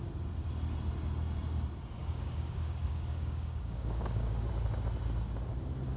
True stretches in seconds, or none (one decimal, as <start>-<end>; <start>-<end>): 0.0-2.0; 4.5-6.0